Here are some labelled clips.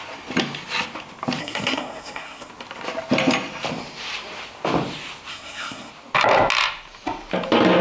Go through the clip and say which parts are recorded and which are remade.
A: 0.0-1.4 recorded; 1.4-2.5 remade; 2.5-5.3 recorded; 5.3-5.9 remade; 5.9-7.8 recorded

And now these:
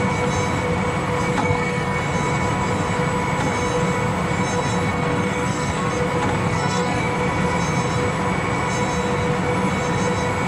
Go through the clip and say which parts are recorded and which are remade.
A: 0.0-1.4 recorded; 1.4-2.0 remade; 2.0-4.9 recorded; 4.9-5.9 remade; 5.9-6.4 recorded; 6.4-7.0 remade; 7.0-10.5 recorded

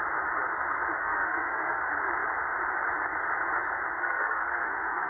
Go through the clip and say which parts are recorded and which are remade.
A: 0.0-1.0 recorded; 1.0-1.8 remade; 1.8-4.0 recorded; 4.0-5.1 remade